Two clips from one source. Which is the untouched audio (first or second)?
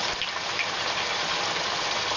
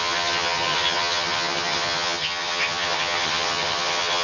first